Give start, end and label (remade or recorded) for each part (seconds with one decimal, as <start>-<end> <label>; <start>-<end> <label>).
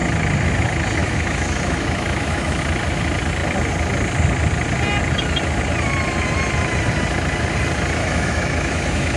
0.0-1.0 recorded; 1.0-2.6 remade; 2.6-8.0 recorded; 8.0-9.2 remade